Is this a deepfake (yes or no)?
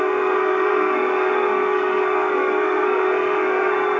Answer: yes